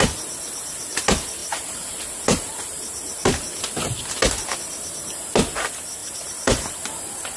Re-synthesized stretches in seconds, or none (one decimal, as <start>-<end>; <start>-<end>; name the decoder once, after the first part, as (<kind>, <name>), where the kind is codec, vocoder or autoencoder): 1.4-3.6 (vocoder, BigVGAN v2); 6.0-7.0